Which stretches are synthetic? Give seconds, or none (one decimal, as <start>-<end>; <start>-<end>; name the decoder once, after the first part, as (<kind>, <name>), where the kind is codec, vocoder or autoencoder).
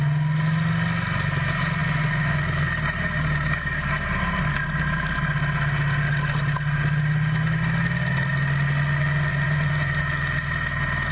9.3-10.0 (vocoder, BigVGAN v2)